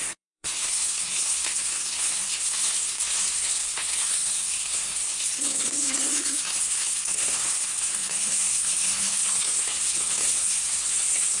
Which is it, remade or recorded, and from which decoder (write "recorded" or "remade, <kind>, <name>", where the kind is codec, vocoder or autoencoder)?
remade, codec, SNAC